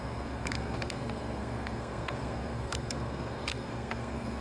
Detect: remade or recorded remade